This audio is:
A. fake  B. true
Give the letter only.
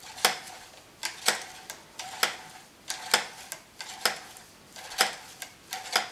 B